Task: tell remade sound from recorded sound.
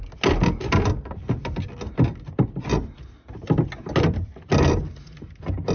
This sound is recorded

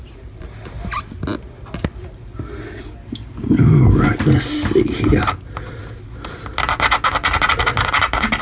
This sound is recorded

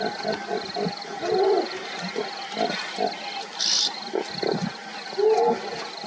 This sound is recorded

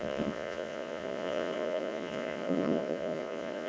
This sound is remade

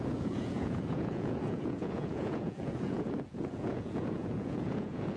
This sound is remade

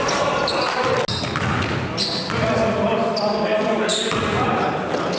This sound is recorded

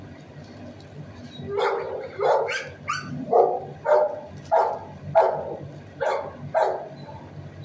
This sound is recorded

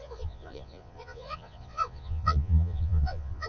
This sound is remade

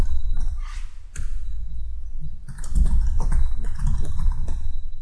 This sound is recorded